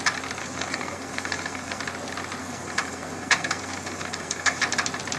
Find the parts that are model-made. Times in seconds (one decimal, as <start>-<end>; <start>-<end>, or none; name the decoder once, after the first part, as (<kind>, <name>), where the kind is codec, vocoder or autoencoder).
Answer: 0.4-1.8 (codec, SNAC); 2.4-4.6